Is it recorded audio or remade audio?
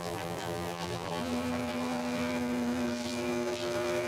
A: remade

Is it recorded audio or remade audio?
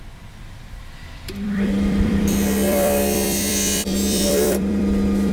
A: remade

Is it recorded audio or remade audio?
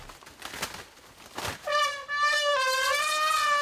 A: recorded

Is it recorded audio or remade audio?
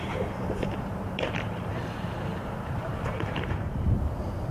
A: remade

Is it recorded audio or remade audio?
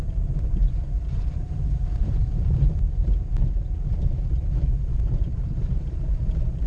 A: remade